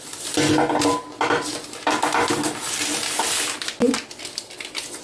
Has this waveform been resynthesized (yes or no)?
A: no